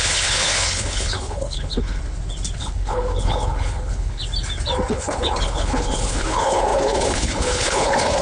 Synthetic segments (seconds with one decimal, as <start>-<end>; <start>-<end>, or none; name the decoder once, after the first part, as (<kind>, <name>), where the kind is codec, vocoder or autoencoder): 0.0-2.0 (codec, HILCodec); 2.6-4.2; 4.9-8.2